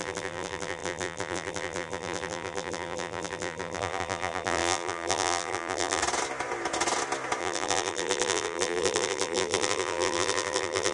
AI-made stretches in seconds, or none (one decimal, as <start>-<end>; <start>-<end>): 0.0-6.0; 7.4-10.9

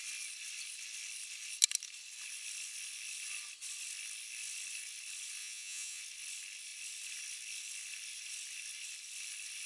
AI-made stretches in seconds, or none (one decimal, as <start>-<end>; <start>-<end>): 5.4-6.0

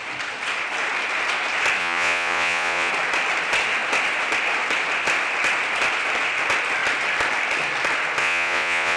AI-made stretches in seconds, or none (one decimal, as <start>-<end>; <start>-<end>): 1.8-2.9; 8.2-9.0